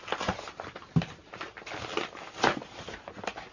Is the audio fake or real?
real